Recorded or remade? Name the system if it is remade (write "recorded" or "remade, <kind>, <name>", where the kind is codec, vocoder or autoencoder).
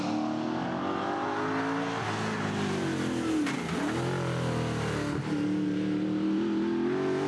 recorded